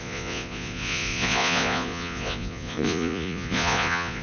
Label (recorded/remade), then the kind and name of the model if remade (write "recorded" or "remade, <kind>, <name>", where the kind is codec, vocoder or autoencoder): remade, vocoder, Vocos